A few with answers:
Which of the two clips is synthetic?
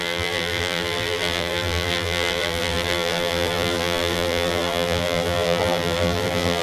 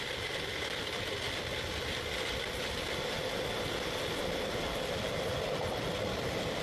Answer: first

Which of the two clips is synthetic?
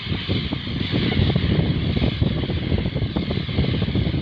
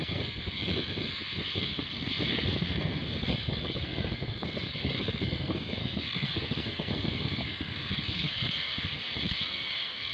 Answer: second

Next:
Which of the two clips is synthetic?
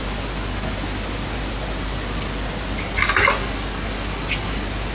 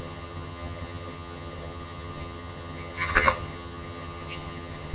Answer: second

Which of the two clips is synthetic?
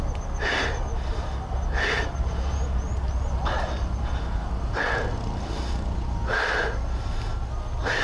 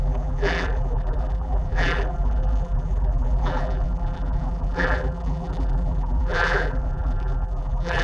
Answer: second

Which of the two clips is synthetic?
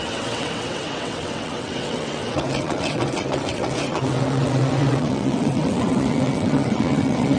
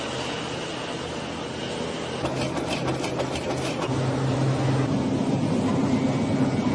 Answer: first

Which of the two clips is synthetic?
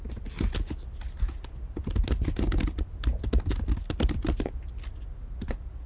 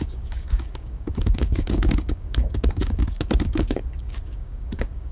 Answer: second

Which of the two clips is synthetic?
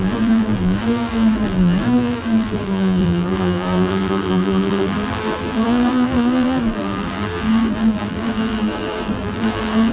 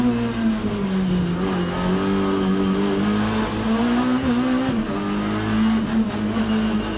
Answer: first